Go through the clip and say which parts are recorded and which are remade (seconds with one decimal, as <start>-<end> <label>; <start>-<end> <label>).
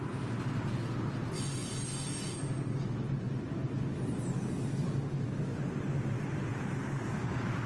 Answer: 0.0-7.7 recorded